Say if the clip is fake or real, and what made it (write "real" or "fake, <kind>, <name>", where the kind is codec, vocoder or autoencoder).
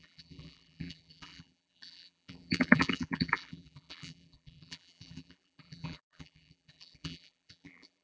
fake, vocoder, BigVGAN v2